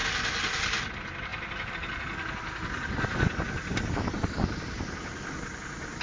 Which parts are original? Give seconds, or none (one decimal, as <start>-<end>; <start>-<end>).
0.0-6.0